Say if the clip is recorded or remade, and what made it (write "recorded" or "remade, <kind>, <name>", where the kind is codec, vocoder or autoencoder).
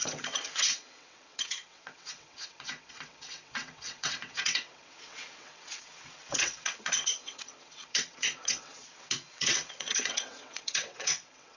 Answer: remade, vocoder, WaveNeXt